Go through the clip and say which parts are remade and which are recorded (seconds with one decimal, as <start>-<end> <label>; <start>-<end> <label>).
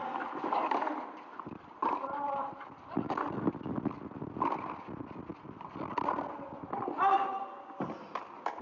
0.0-1.8 recorded; 1.8-3.1 remade; 3.1-8.6 recorded